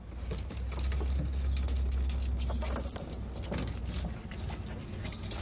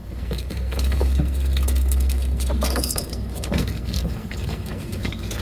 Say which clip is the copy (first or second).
second